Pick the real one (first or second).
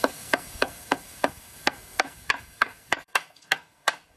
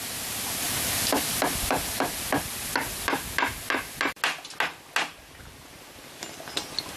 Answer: second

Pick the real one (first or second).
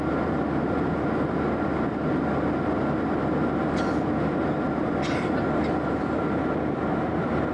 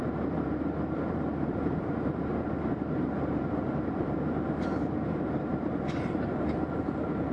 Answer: first